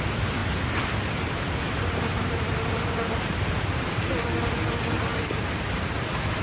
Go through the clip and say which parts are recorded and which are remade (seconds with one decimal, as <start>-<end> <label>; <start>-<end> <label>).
0.0-0.4 recorded; 0.4-4.2 remade; 4.2-5.1 recorded; 5.1-6.4 remade